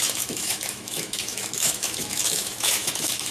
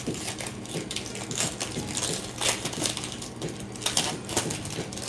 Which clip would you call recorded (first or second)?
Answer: second